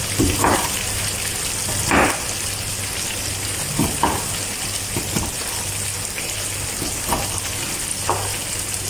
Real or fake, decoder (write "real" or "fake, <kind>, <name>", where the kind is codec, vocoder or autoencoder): real